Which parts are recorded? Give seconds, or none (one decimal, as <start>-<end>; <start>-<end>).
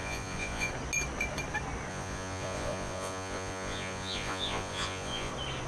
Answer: 0.7-1.9; 5.3-5.7